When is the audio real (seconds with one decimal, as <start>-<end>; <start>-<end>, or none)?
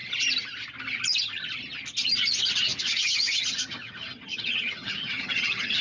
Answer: 0.0-2.8